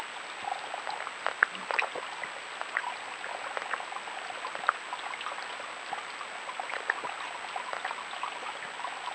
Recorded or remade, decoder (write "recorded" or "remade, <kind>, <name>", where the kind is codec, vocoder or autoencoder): recorded